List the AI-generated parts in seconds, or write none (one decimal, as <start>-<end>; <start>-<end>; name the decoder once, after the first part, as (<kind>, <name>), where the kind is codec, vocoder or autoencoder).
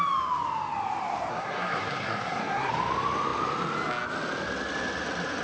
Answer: 1.3-2.7 (codec, SNAC)